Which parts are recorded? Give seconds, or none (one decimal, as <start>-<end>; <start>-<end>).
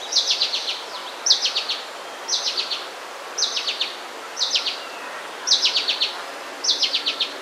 0.0-7.4